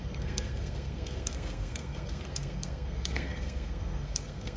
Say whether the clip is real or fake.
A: fake